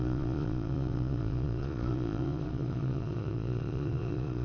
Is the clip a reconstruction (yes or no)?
yes